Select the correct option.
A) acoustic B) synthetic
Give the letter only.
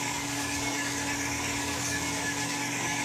B